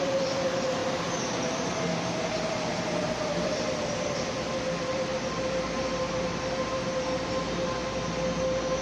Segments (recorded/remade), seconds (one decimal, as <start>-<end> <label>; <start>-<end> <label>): 0.0-0.8 recorded; 0.8-4.5 remade; 4.5-8.8 recorded